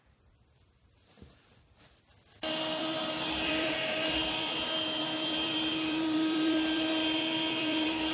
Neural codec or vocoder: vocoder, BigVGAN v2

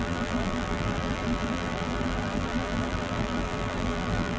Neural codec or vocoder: vocoder, BigVGAN v2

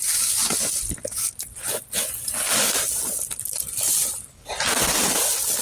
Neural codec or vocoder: none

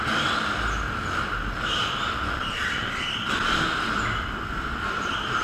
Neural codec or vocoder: vocoder, BigVGAN v2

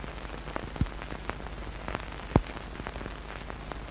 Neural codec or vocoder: none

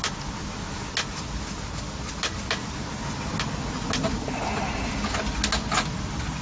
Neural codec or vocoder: none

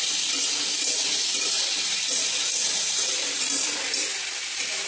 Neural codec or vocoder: none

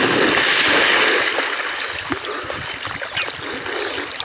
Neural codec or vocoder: none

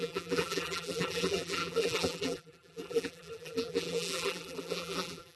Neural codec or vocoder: vocoder, BigVGAN v2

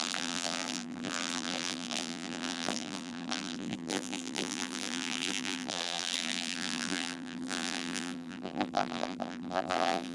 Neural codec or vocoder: vocoder, BigVGAN v2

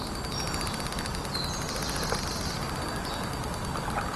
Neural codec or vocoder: none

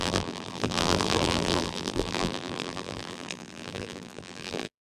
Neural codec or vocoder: vocoder, BigVGAN v2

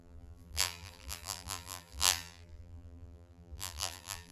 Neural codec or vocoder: vocoder, BigVGAN v2